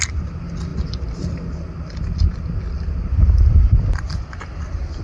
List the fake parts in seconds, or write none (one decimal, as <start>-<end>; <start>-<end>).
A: none